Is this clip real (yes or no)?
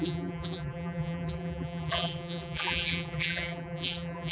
no